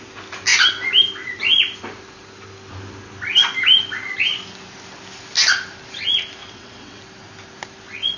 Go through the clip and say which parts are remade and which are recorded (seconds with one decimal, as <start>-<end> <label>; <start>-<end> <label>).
0.0-6.4 recorded; 6.4-7.0 remade; 7.0-8.2 recorded